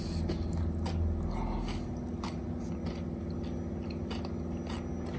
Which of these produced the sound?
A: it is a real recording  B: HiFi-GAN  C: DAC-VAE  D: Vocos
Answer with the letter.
A